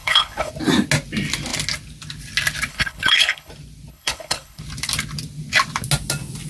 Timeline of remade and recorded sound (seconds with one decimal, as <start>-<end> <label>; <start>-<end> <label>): 0.0-0.5 remade; 0.5-2.7 recorded; 2.7-3.5 remade; 3.5-3.9 recorded; 3.9-4.6 remade; 4.6-6.5 recorded